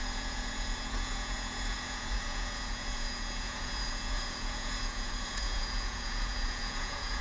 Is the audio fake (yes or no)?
yes